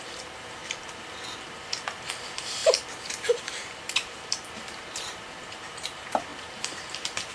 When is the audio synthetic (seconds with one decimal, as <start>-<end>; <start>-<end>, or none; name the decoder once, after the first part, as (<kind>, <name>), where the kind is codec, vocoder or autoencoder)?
0.0-0.6 (vocoder, BigVGAN v2); 2.1-7.3